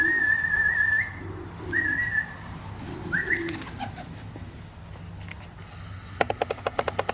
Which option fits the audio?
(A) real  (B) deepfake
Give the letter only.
A